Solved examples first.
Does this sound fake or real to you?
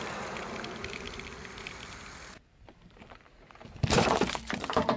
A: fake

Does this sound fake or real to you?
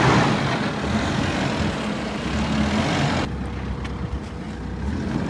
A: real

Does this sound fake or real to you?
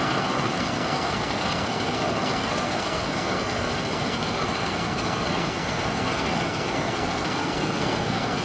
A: fake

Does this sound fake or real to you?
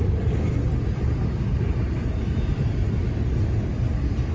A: real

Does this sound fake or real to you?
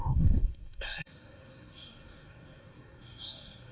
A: fake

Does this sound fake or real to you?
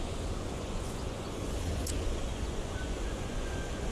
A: fake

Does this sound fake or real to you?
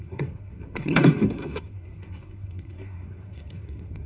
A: fake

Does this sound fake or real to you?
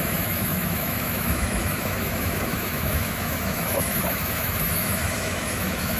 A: fake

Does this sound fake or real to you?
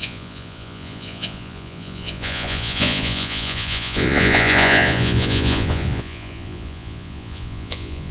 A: fake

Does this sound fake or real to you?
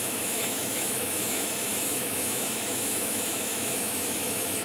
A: fake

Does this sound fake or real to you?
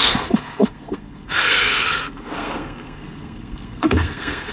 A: fake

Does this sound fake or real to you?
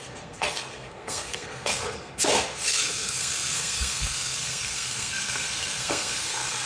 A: fake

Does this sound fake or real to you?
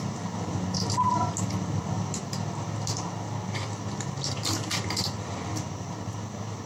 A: real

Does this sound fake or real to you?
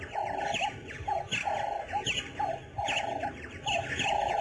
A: real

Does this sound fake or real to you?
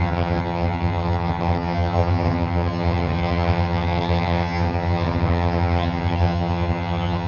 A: fake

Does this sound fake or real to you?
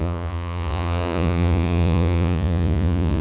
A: fake